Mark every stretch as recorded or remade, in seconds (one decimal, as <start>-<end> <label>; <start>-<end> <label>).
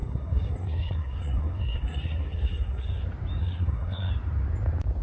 0.0-3.0 remade; 3.0-3.4 recorded; 3.4-4.1 remade; 4.1-5.0 recorded